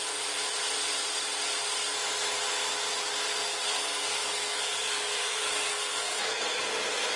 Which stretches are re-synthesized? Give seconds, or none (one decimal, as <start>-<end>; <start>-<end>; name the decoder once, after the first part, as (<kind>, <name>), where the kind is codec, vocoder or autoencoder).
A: 3.5-6.6 (codec, SNAC)

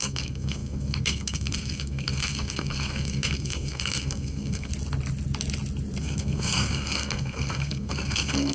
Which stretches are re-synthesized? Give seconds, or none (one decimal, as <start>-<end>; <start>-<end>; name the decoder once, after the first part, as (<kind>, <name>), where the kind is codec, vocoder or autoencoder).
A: 0.0-4.7 (codec, SNAC); 6.0-8.5

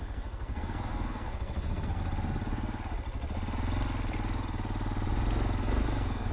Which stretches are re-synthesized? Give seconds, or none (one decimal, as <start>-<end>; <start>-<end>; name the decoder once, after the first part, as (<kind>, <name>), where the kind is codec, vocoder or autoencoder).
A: 0.0-2.0 (codec, SNAC); 5.8-6.3

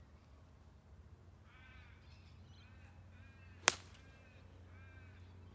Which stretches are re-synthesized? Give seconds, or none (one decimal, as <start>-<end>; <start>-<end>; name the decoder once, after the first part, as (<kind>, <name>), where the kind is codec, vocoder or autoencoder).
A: none

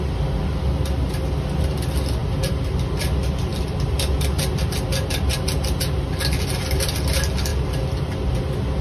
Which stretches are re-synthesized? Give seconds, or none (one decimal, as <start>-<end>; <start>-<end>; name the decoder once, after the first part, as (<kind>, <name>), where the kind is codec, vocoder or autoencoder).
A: none

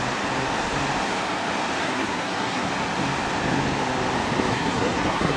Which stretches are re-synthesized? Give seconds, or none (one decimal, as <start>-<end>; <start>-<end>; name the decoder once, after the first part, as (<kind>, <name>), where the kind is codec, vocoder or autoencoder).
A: 1.8-2.7 (codec, SNAC); 4.5-5.4